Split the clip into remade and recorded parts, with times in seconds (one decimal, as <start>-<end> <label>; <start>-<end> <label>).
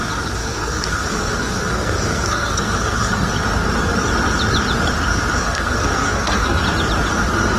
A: 0.0-0.4 recorded; 0.4-3.3 remade; 3.3-5.4 recorded; 5.4-6.6 remade; 6.6-7.6 recorded